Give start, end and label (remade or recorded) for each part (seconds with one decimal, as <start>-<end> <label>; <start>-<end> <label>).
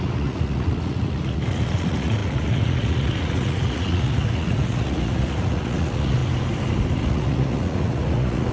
0.0-6.2 remade; 6.2-7.0 recorded; 7.0-8.5 remade